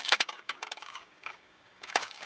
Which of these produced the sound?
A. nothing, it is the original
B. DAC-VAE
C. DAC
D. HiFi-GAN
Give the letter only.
C